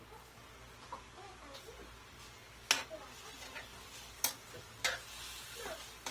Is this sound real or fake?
real